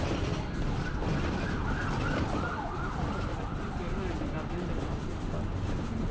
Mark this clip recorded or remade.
recorded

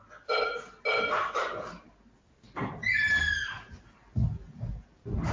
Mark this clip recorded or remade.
recorded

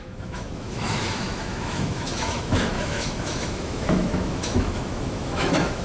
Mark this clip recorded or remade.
remade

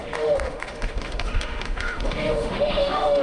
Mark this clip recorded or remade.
remade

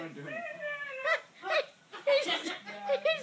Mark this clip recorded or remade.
recorded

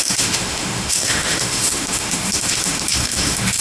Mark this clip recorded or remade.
remade